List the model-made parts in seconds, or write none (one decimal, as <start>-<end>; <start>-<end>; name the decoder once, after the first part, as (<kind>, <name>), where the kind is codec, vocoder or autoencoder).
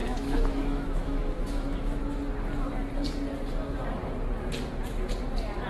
0.0-2.0 (autoencoder, DAC-VAE)